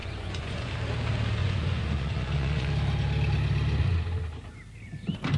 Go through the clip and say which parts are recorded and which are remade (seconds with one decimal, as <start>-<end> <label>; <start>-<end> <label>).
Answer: 0.0-0.7 remade; 0.7-1.4 recorded; 1.4-2.7 remade; 2.7-5.4 recorded